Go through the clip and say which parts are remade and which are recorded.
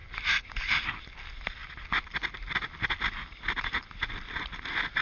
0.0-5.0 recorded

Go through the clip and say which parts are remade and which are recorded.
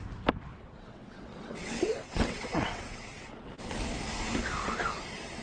0.0-0.5 recorded; 0.5-3.7 remade; 3.7-5.4 recorded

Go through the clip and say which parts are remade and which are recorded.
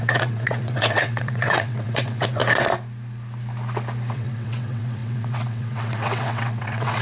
0.0-2.4 remade; 2.4-4.1 recorded; 4.1-7.0 remade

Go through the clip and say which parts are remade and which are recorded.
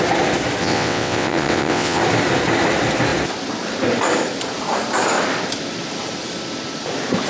0.0-0.6 recorded; 0.6-2.0 remade; 2.0-7.3 recorded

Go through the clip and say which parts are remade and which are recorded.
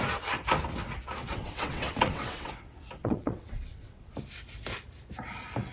0.0-1.2 recorded; 1.2-2.5 remade; 2.5-3.0 recorded; 3.0-4.1 remade; 4.1-5.7 recorded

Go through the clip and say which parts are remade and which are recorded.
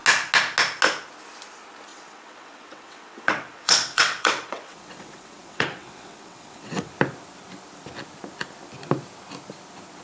0.0-1.9 recorded; 1.9-6.9 remade; 6.9-10.0 recorded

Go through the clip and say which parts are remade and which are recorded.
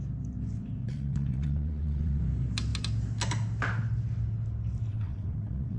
0.0-0.8 recorded; 0.8-2.2 remade; 2.2-4.9 recorded; 4.9-5.8 remade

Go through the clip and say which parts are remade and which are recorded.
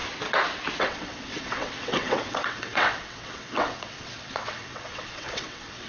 0.0-0.8 recorded; 0.8-5.9 remade